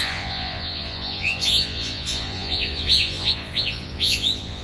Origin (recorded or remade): remade